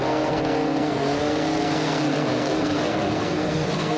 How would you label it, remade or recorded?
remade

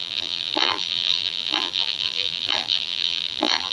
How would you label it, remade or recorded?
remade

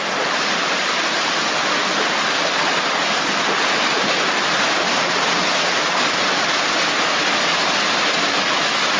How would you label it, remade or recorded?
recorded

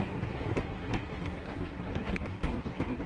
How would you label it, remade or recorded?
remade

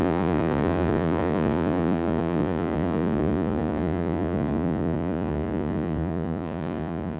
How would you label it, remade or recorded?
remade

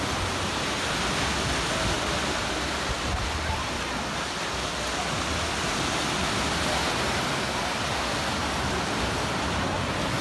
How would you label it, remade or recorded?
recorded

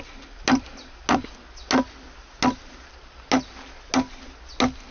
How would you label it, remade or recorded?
recorded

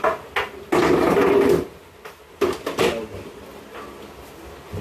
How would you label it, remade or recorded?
recorded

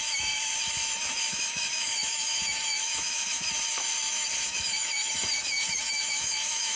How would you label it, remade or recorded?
remade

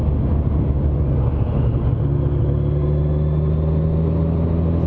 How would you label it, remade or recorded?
recorded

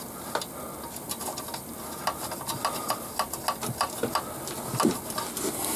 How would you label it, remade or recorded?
recorded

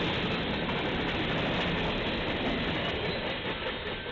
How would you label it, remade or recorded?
recorded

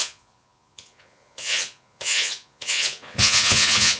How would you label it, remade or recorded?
remade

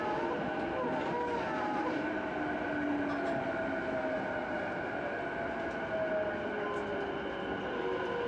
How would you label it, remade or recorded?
recorded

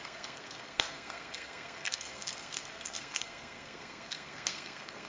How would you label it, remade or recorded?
remade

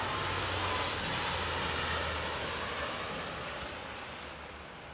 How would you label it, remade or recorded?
recorded